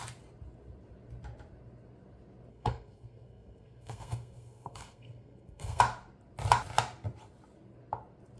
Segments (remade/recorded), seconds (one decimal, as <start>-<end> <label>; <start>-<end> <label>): 0.0-2.5 recorded; 2.5-5.8 remade; 5.8-8.4 recorded